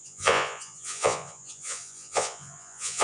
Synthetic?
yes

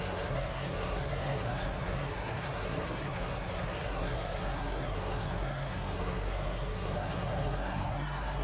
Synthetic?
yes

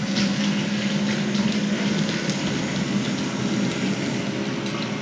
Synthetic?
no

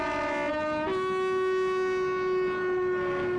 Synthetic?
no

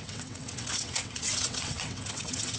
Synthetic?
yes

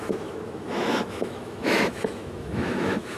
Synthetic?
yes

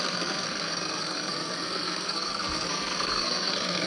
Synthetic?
yes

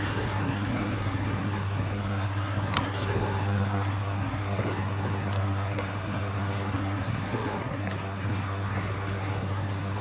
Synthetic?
yes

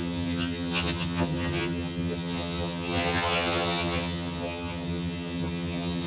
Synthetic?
yes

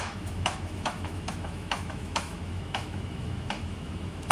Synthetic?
yes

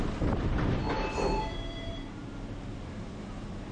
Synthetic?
yes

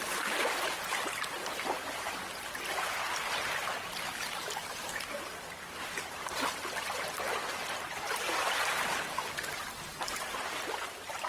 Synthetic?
no